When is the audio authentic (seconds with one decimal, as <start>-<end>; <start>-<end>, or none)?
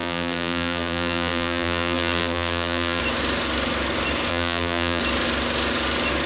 3.0-4.3; 5.0-6.3